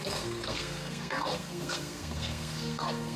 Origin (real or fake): fake